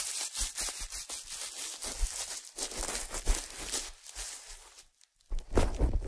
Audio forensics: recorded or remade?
recorded